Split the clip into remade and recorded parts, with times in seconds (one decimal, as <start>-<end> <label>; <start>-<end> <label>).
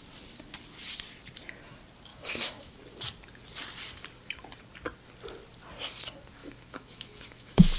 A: 0.0-2.1 recorded; 2.1-2.8 remade; 2.8-6.4 recorded; 6.4-7.8 remade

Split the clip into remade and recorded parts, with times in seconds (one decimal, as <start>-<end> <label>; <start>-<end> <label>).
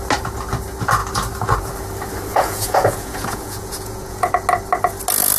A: 0.0-2.3 recorded; 2.3-4.3 remade; 4.3-5.4 recorded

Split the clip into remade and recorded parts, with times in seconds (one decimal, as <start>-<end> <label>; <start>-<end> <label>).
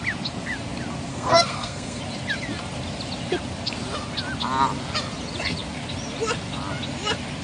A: 0.0-1.1 recorded; 1.1-2.0 remade; 2.0-7.4 recorded